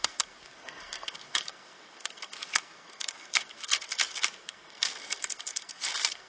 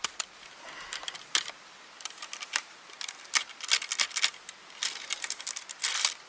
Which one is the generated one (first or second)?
first